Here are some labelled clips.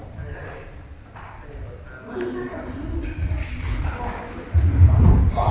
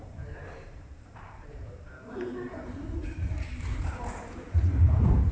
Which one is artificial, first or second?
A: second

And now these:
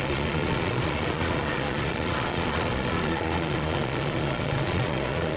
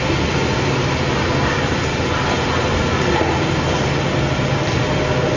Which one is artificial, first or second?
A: first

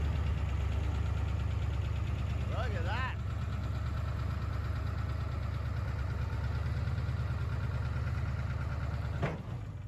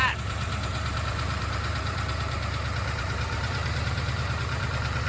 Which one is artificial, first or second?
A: second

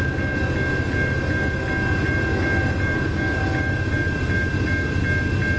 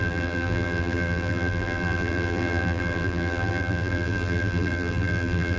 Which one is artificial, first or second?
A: second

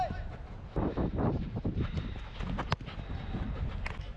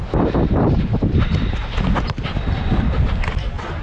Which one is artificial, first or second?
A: second